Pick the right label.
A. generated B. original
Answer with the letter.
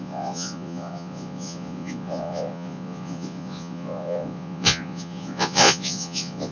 A